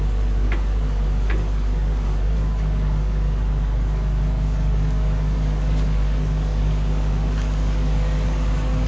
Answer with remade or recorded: remade